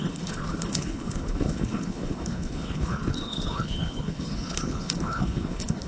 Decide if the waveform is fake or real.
fake